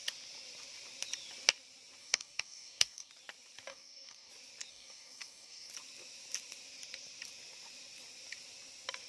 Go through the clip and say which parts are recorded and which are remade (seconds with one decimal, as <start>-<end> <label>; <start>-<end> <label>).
0.0-2.0 recorded; 2.0-3.1 remade; 3.1-3.7 recorded; 3.7-4.3 remade; 4.3-4.7 recorded; 4.7-5.7 remade; 5.7-9.1 recorded

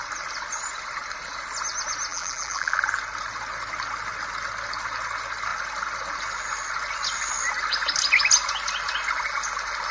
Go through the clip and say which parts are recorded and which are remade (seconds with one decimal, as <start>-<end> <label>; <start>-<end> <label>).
0.0-2.1 recorded; 2.1-2.8 remade; 2.8-9.9 recorded

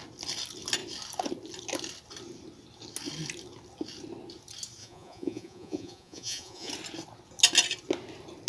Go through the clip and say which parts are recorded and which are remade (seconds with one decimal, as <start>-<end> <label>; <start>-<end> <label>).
0.0-4.8 recorded; 4.8-6.7 remade; 6.7-8.5 recorded